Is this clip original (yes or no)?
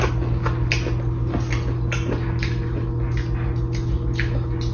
yes